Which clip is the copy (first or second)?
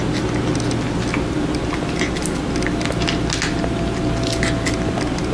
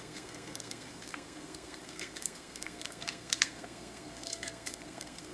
second